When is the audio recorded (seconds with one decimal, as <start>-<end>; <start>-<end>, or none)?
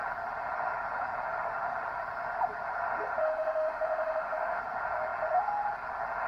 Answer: 0.0-3.2; 4.6-6.3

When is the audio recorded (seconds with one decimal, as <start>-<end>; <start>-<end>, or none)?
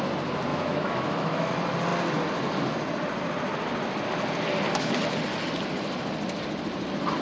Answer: 0.0-0.5; 1.5-7.2